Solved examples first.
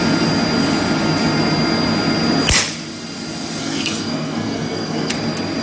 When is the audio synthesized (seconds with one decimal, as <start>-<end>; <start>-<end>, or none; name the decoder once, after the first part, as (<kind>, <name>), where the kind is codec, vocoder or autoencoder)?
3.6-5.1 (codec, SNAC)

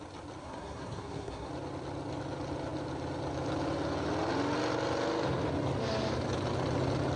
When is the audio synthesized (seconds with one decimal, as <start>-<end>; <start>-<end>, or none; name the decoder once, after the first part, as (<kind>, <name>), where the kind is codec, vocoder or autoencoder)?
0.4-1.5 (codec, SNAC)

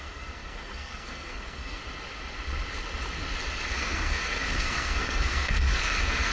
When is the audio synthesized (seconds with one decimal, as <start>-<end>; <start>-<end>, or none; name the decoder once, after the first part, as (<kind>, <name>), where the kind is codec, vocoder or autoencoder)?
0.0-1.8 (codec, SNAC); 3.7-6.3

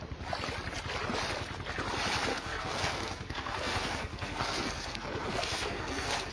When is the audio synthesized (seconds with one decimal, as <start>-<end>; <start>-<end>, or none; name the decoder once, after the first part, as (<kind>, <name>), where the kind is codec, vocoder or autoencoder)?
2.3-6.3 (codec, SNAC)

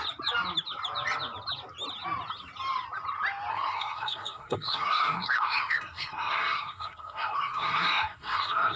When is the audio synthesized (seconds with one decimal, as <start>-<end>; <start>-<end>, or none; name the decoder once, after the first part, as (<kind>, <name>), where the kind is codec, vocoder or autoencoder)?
3.5-8.8 (codec, SNAC)